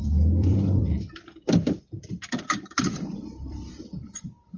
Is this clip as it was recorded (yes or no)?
no